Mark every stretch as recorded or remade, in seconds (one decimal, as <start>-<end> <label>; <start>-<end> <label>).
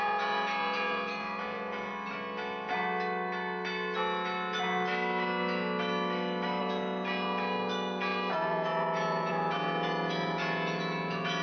0.0-1.9 remade; 1.9-6.6 recorded; 6.6-11.4 remade